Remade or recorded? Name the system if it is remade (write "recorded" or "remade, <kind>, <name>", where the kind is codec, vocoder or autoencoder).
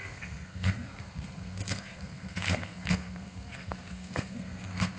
remade, codec, SNAC